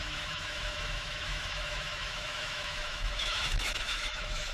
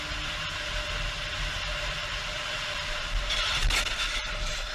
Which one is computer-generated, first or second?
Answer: first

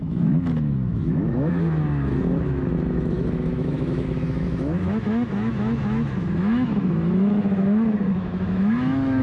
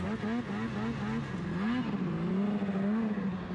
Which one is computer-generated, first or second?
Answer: first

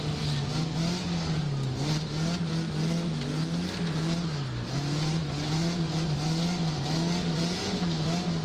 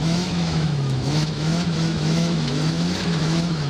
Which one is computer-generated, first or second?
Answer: second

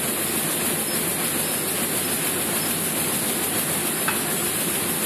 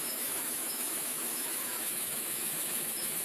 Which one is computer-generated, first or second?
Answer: second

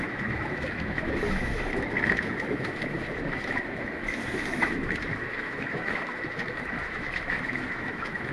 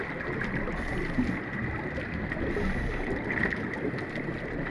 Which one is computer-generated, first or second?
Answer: first